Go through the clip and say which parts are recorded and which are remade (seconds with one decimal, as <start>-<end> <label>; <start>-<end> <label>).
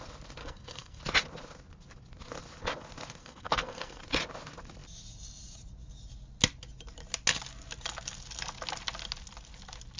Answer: 0.0-0.4 recorded; 0.4-1.0 remade; 1.0-3.2 recorded; 3.2-4.0 remade; 4.0-10.0 recorded